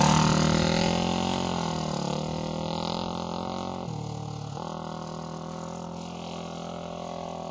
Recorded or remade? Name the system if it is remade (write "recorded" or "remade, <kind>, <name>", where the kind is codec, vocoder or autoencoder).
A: recorded